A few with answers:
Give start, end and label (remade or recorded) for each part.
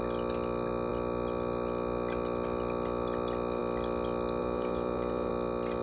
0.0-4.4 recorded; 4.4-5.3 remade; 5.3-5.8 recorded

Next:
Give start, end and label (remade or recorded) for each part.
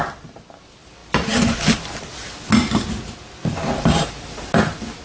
0.0-5.0 recorded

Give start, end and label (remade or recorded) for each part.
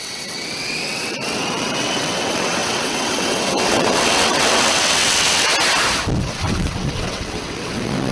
0.0-5.5 remade; 5.5-6.2 recorded; 6.2-8.1 remade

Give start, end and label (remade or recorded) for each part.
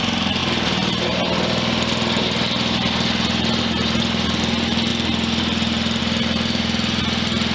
0.0-7.5 recorded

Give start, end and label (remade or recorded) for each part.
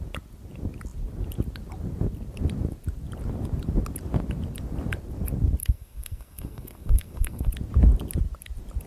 0.0-5.6 recorded; 5.6-7.5 remade; 7.5-8.9 recorded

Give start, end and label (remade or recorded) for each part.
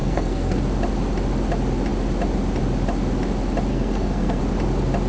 0.0-0.6 remade; 0.6-3.7 recorded; 3.7-4.4 remade; 4.4-5.1 recorded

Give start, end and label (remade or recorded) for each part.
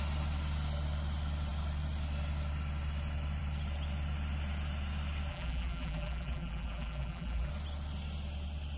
0.0-5.3 recorded; 5.3-7.5 remade; 7.5-8.8 recorded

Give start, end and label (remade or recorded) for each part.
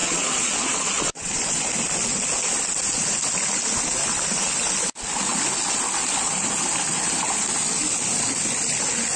0.0-1.7 remade; 1.7-9.2 recorded